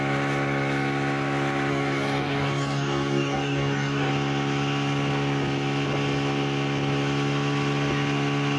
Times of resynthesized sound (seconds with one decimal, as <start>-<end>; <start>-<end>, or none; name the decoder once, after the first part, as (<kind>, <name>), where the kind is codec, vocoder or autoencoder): 1.7-4.1 (codec, DAC)